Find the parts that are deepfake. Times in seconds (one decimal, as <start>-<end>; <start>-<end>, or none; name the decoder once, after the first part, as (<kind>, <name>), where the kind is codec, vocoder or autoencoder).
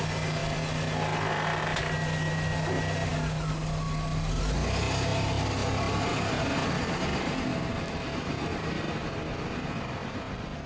none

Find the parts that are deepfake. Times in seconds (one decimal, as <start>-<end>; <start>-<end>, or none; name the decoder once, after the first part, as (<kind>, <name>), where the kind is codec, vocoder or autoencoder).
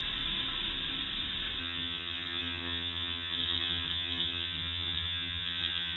1.6-6.0 (vocoder, HiFi-GAN)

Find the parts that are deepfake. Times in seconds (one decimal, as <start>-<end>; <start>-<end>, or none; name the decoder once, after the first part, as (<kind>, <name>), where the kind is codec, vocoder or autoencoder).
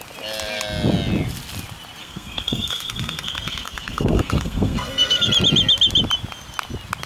2.0-5.3 (codec, SNAC)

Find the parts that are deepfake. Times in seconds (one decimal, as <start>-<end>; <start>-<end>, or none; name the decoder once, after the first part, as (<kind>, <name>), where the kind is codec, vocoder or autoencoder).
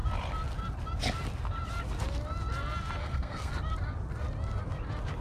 3.0-3.5 (codec, SNAC)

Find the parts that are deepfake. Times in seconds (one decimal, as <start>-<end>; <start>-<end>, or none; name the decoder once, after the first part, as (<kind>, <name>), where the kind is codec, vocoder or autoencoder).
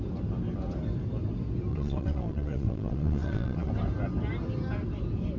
1.7-3.7 (vocoder, WaveNeXt)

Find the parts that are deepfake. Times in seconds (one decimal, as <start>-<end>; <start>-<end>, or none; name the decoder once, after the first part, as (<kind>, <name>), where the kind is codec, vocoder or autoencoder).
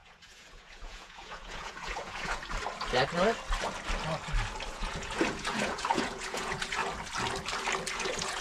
0.0-2.4 (vocoder, Vocos); 4.7-6.8; 7.9-8.4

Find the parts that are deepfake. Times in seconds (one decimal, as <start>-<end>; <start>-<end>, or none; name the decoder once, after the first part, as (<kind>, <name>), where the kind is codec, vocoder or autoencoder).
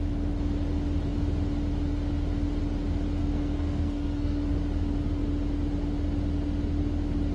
3.2-4.5 (codec, SNAC)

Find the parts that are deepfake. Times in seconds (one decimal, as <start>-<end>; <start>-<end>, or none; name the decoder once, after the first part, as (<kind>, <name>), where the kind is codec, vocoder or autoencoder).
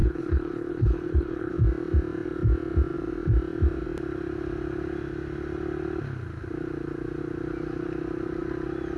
0.0-1.5 (codec, HILCodec)